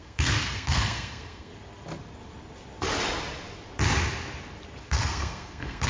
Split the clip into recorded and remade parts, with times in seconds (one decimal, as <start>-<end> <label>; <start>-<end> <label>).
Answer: 0.0-1.5 remade; 1.5-4.8 recorded; 4.8-5.9 remade